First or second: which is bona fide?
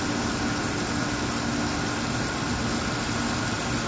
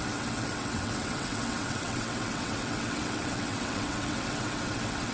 first